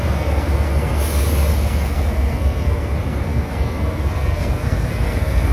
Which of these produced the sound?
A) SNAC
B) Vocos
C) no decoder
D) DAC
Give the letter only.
A